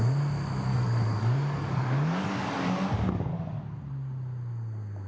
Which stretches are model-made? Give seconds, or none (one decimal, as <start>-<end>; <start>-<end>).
0.7-3.6